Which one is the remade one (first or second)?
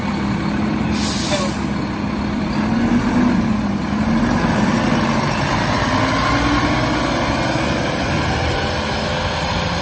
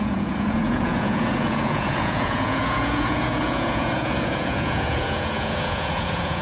second